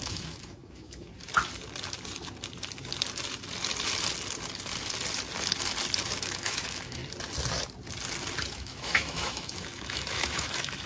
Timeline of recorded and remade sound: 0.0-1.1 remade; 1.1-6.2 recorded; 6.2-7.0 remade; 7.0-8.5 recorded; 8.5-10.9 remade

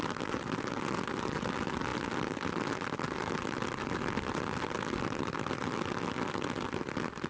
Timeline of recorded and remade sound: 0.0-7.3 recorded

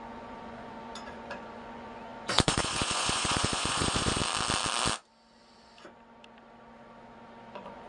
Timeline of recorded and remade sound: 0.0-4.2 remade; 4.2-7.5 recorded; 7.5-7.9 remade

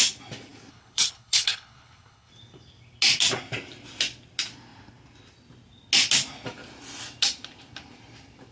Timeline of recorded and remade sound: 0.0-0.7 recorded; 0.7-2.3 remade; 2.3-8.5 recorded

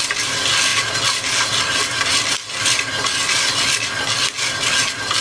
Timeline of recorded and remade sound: 0.0-5.2 recorded